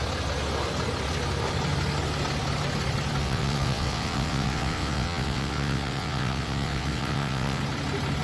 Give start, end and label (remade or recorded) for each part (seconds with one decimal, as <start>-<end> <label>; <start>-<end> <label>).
0.0-3.2 recorded; 3.2-7.6 remade; 7.6-8.2 recorded